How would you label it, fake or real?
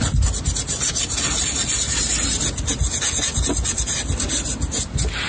real